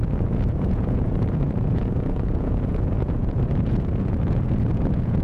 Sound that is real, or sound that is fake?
fake